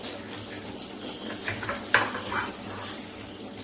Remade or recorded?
recorded